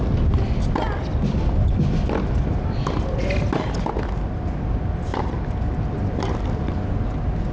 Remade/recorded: recorded